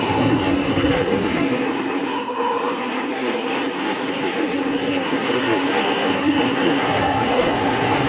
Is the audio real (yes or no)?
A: no